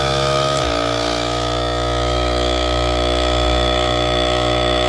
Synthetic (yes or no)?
yes